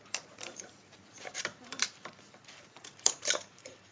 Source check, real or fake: fake